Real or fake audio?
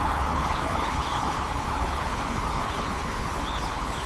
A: fake